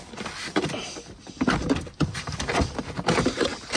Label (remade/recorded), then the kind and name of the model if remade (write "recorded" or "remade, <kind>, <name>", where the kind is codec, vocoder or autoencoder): recorded